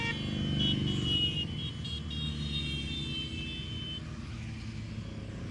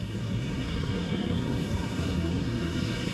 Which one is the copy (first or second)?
second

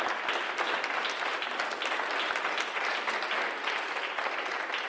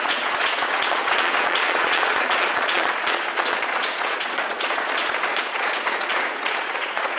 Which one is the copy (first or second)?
second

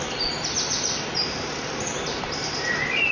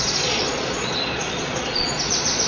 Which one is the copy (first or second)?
second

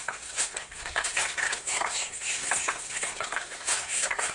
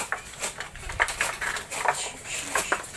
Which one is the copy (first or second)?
first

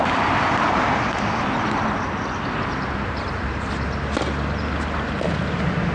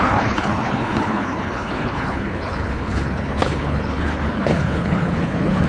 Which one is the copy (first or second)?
second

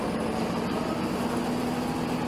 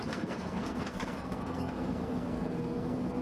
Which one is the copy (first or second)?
second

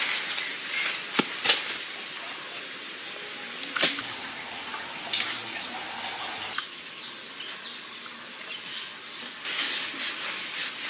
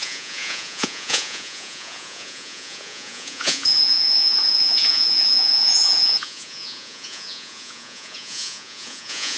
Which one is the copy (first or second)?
second